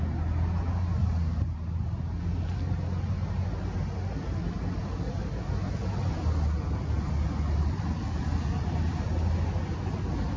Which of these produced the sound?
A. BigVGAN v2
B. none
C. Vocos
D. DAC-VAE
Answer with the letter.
B